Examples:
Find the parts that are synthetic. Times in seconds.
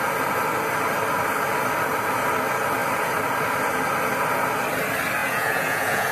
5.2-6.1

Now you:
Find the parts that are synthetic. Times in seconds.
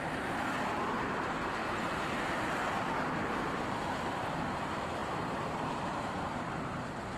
0.0-1.6; 3.2-7.2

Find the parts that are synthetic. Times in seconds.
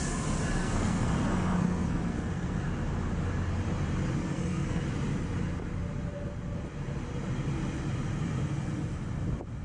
0.6-2.7; 4.2-4.8